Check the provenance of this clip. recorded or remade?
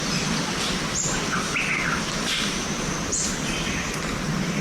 recorded